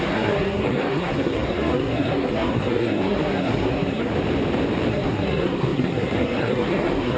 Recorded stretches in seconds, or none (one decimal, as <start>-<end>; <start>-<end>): 4.1-4.9